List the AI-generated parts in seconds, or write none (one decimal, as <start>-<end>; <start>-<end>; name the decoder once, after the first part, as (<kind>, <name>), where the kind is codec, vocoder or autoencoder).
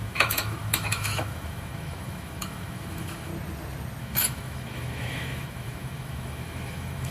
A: 0.0-3.3 (autoencoder, DAC-VAE); 4.0-7.1